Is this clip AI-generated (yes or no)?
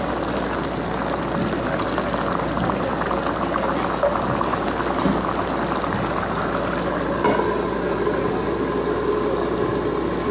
no